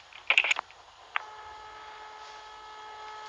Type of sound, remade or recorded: recorded